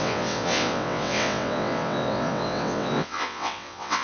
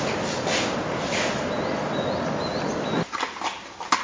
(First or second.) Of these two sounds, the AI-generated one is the first